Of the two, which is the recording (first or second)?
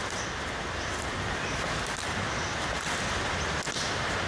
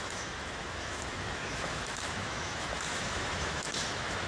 first